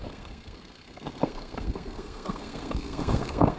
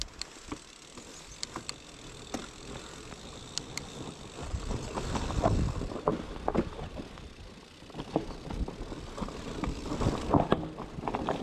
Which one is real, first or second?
second